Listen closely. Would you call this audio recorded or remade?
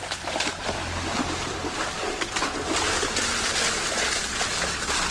recorded